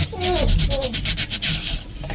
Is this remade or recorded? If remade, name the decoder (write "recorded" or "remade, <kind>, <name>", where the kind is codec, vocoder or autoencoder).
recorded